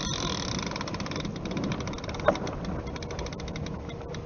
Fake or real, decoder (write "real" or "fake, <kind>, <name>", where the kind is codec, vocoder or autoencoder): real